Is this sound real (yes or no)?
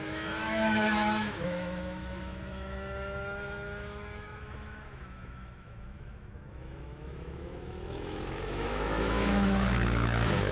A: no